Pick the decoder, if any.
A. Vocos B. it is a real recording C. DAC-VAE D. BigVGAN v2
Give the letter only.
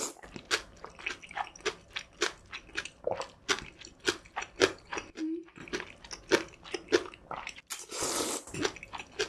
B